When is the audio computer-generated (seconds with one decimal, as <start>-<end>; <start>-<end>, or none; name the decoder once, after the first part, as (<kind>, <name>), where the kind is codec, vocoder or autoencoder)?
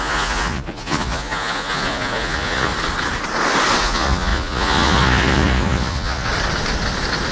0.0-2.7 (vocoder, Vocos); 3.8-6.3